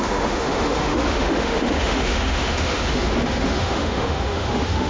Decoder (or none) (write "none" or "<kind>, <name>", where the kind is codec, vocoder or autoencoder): autoencoder, DAC-VAE